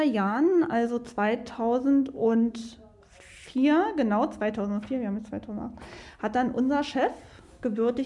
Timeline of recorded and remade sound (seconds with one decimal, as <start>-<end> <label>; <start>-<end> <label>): 0.0-1.4 remade; 1.4-2.2 recorded; 2.2-2.6 remade; 2.6-7.5 recorded; 7.5-8.1 remade